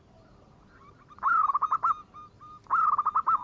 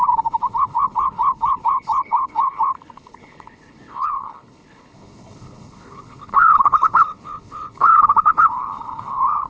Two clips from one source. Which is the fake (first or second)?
second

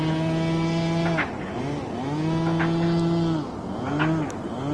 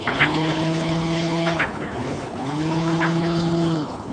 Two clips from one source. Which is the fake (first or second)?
second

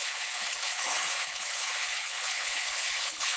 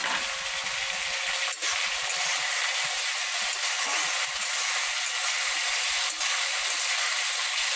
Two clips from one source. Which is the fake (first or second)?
first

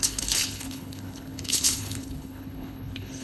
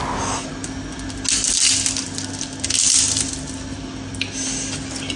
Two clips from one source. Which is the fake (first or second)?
first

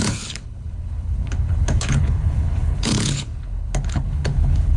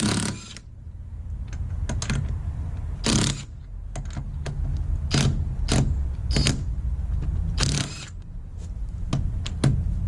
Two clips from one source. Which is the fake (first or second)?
first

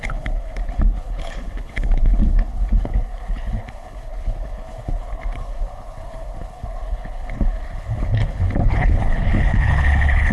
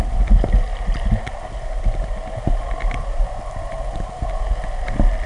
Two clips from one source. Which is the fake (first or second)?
first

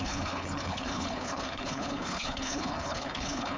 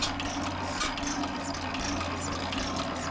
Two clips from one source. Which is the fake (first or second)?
first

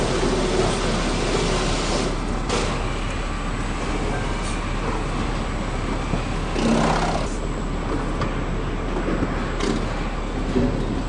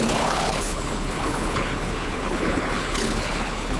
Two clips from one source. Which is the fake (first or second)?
second